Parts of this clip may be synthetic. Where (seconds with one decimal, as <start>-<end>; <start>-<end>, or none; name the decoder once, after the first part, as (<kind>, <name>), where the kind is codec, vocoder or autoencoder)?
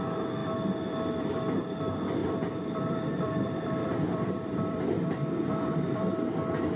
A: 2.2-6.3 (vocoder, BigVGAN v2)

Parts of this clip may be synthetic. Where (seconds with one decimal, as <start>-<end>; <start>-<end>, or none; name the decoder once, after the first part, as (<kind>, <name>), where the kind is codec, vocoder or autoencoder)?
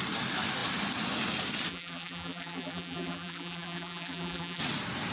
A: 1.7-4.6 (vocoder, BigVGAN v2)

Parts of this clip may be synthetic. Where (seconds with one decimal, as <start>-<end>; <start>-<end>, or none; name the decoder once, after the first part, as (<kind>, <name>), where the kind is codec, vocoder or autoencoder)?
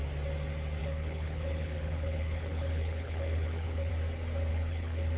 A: 0.8-3.9 (codec, HILCodec); 4.5-5.2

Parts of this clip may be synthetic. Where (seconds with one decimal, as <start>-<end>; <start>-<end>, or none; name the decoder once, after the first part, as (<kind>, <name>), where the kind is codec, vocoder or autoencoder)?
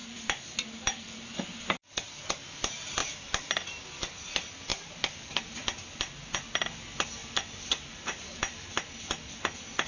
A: 0.0-2.1 (vocoder, BigVGAN v2); 3.0-3.5; 4.7-5.4; 7.2-8.4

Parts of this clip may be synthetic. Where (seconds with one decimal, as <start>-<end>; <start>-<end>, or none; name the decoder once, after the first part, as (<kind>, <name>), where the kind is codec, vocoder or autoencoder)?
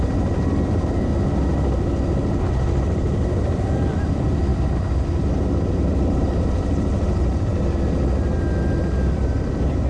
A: 0.0-1.1 (vocoder, BigVGAN v2); 2.4-7.5; 8.8-9.9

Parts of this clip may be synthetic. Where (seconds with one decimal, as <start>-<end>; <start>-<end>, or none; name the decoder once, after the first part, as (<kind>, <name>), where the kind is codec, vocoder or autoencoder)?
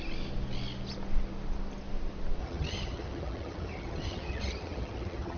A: 2.4-5.4 (vocoder, HiFi-GAN)